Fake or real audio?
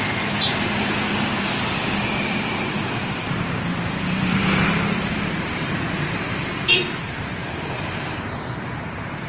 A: fake